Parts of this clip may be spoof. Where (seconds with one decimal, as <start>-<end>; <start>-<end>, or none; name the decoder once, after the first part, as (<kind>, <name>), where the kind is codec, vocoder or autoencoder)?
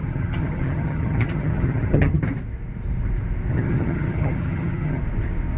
0.0-2.2 (vocoder, HiFi-GAN); 3.5-5.0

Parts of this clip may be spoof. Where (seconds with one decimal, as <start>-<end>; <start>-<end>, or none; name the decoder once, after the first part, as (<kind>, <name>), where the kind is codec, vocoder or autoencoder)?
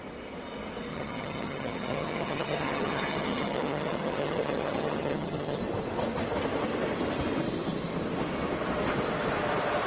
0.9-5.6 (vocoder, HiFi-GAN)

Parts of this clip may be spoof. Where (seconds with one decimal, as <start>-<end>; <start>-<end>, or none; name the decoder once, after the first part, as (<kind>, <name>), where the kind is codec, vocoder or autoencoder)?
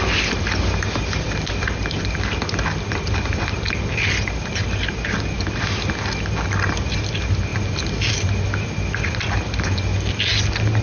none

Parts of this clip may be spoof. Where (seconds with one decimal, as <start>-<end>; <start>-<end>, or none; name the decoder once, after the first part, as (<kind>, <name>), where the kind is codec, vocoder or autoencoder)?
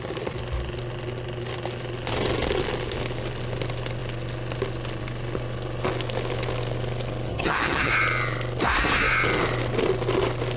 7.3-7.9 (vocoder, HiFi-GAN)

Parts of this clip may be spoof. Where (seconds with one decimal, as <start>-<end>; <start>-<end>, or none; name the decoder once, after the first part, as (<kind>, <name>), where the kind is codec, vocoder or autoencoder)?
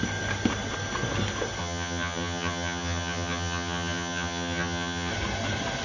1.6-5.1 (vocoder, HiFi-GAN)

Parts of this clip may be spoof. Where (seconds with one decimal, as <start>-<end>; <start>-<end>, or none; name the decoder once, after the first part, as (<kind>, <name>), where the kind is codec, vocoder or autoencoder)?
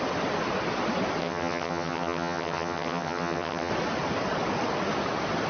1.2-3.7 (vocoder, HiFi-GAN)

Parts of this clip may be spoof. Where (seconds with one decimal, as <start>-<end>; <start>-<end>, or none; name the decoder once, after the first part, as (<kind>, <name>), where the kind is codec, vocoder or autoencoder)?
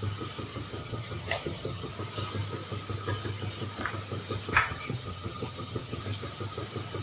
0.8-1.9 (vocoder, HiFi-GAN); 4.5-6.0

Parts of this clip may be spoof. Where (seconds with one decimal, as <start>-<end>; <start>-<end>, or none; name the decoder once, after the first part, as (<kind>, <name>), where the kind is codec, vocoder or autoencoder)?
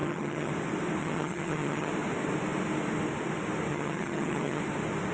0.0-0.5 (vocoder, HiFi-GAN); 1.0-1.9; 3.7-4.6